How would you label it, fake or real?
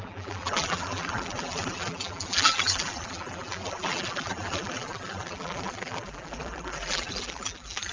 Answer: fake